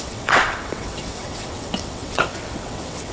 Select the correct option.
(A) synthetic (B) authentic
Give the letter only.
A